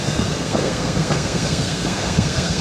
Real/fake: fake